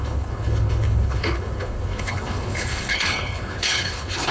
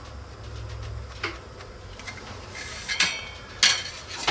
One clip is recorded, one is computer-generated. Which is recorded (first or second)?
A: second